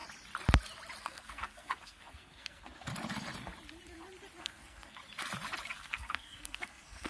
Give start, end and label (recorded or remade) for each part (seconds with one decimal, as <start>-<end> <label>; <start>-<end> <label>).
0.0-1.0 recorded; 1.0-2.9 remade; 2.9-4.4 recorded; 4.4-5.0 remade; 5.0-5.7 recorded; 5.7-7.1 remade